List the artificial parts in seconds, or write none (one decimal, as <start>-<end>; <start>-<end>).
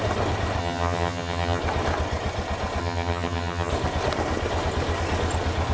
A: 0.6-1.6; 2.8-3.7